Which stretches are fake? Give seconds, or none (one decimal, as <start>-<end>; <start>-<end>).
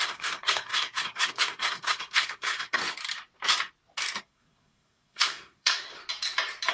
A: 0.0-2.8; 4.2-6.0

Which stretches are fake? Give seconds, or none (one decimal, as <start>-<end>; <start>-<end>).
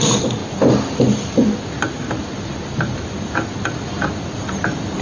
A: 0.0-5.0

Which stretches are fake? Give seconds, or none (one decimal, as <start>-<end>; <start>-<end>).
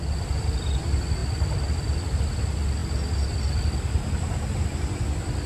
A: none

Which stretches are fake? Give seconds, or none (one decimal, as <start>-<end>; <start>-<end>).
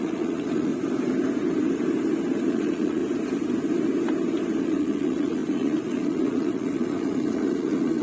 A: 0.0-0.7; 2.5-3.0; 4.6-8.0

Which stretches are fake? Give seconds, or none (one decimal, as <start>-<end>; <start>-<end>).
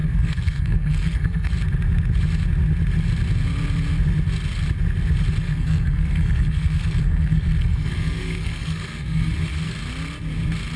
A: 0.0-1.5; 5.4-9.3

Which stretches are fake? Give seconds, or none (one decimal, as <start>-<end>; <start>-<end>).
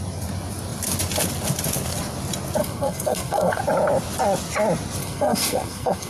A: 2.6-3.6; 5.0-6.1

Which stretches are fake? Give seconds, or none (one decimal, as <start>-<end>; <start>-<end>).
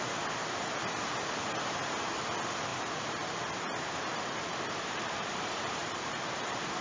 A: 2.7-6.8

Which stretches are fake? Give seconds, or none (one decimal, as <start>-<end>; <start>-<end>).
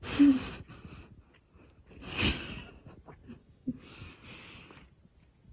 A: 2.1-2.7; 3.4-4.1